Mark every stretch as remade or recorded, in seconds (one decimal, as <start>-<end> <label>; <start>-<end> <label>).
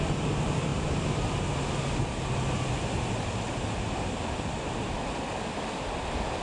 0.0-6.4 recorded